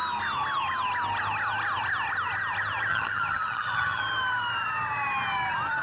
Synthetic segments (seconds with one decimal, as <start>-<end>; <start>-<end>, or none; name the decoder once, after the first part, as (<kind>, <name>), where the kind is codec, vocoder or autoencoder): 2.9-4.0 (vocoder, HiFi-GAN)